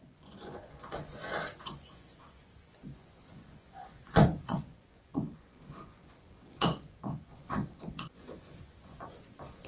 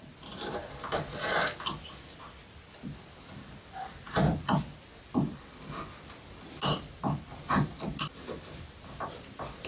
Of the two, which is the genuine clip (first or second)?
second